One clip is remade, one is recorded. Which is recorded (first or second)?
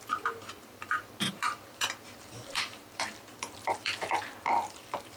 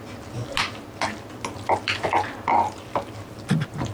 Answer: second